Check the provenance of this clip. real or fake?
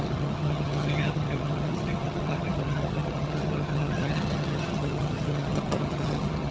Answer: fake